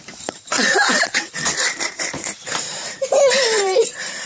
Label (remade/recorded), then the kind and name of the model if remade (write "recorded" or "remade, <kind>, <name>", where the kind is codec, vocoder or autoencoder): remade, vocoder, BigVGAN v2